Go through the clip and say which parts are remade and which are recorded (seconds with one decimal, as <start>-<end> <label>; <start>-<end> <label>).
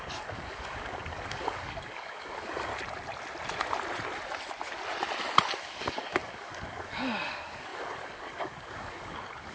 0.0-2.7 remade; 2.7-5.6 recorded; 5.6-9.5 remade